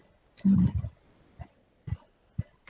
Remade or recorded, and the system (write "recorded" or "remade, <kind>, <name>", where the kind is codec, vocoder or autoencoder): recorded